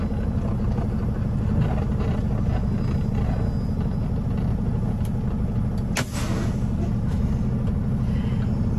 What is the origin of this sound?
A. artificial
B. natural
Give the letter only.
B